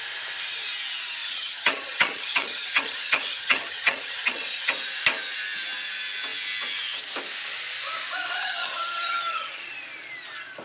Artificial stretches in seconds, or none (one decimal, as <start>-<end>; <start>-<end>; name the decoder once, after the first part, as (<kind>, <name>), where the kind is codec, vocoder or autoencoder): 1.2-4.7 (vocoder, HiFi-GAN); 8.4-9.7